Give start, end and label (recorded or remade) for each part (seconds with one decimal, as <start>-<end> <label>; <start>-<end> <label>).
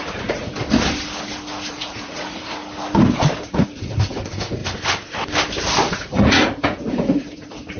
0.0-0.5 remade; 0.5-1.7 recorded; 1.7-2.6 remade; 2.6-3.4 recorded; 3.4-4.6 remade; 4.6-5.9 recorded; 5.9-7.8 remade